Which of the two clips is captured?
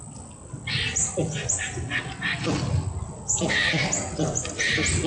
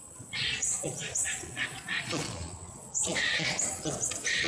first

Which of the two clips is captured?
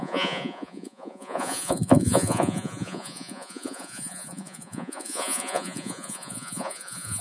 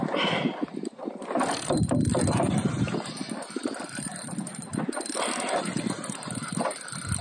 second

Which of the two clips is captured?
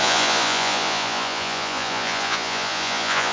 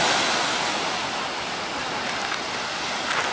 second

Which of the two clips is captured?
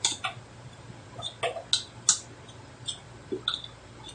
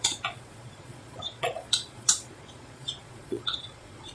first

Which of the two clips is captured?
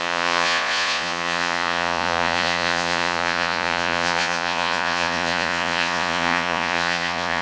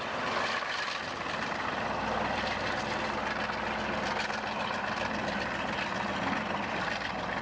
second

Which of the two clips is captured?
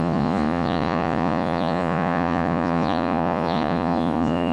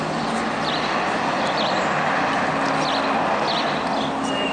second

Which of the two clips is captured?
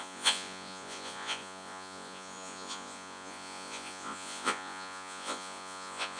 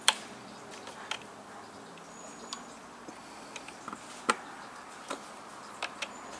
second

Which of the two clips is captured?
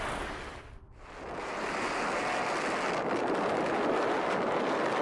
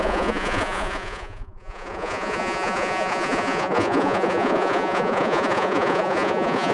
first